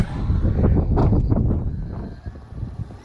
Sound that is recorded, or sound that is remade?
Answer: recorded